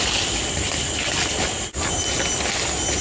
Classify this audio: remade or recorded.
recorded